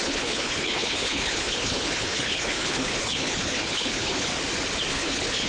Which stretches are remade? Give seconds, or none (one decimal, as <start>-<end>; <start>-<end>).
0.0-4.3; 4.9-5.5